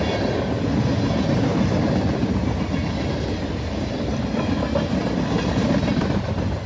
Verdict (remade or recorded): recorded